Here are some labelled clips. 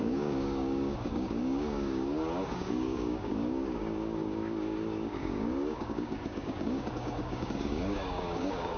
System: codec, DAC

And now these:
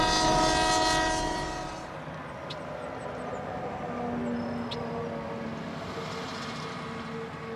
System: none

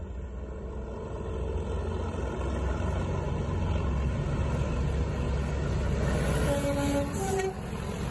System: none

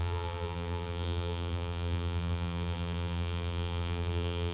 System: vocoder, BigVGAN v2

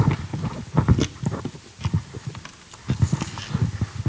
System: none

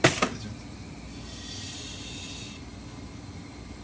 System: none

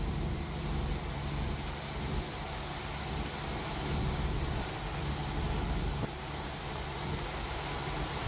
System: none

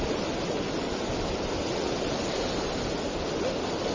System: none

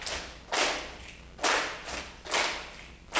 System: none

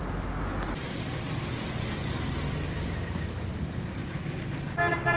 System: none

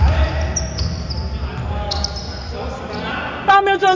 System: none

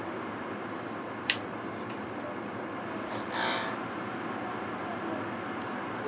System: none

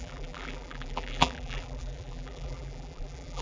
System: vocoder, BigVGAN v2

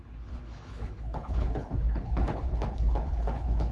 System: codec, HILCodec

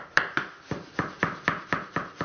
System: vocoder, BigVGAN v2